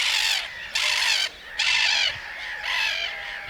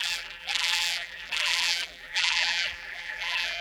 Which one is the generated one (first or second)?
second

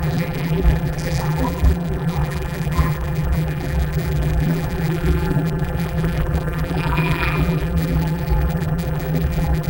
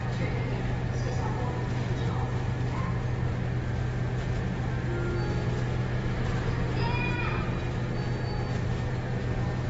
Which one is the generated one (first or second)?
first